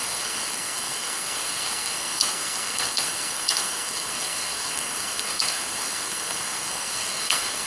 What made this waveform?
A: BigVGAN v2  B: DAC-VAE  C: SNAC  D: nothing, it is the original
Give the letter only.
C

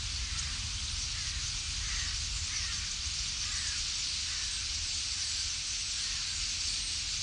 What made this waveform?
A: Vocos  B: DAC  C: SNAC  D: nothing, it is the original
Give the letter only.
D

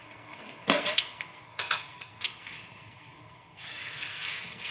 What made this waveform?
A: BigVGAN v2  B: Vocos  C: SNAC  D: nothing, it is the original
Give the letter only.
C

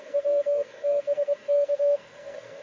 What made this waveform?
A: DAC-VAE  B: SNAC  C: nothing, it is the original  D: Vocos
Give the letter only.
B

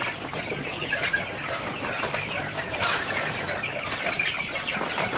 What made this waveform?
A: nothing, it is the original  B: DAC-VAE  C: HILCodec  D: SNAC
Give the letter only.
A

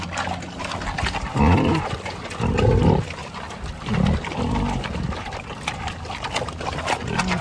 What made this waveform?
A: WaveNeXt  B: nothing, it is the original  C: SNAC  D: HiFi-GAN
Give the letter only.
B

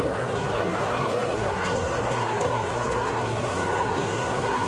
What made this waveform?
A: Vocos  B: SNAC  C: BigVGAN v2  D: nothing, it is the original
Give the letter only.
B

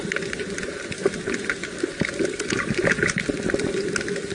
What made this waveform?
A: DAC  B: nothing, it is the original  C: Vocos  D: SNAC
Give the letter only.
B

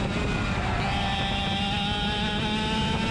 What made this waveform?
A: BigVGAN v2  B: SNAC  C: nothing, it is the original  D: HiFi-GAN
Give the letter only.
C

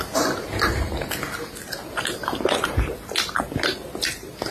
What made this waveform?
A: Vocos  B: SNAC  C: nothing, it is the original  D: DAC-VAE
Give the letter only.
C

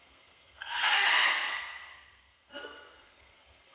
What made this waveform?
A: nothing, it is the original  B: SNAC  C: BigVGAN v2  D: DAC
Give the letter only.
B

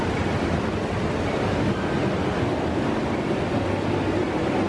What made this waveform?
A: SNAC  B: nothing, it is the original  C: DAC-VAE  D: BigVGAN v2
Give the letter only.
B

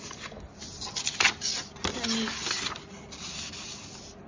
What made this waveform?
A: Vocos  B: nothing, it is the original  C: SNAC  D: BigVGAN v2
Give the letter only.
B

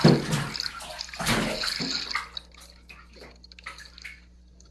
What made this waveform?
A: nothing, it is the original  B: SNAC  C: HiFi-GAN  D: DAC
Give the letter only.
A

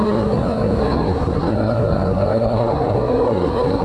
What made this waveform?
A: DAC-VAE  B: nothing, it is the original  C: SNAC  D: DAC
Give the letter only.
C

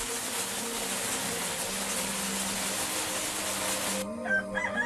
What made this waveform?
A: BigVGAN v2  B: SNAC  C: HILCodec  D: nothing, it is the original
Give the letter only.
D